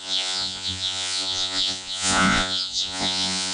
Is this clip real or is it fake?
fake